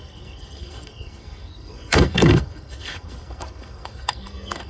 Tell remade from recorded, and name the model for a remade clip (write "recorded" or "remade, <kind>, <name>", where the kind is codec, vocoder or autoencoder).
remade, codec, SNAC